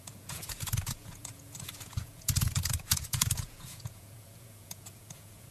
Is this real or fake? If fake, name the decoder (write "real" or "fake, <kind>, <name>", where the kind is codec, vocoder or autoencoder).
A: fake, vocoder, Vocos